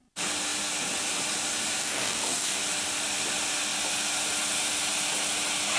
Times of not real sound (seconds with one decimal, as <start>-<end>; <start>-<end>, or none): 1.8-2.6